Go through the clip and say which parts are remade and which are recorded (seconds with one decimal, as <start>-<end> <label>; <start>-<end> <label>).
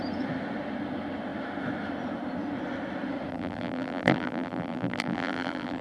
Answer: 0.0-3.3 recorded; 3.3-5.8 remade